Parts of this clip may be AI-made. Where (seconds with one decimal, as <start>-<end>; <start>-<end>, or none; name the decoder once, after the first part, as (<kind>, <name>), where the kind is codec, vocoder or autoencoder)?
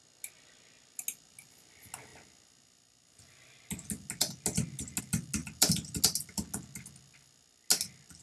5.4-6.0 (vocoder, BigVGAN v2)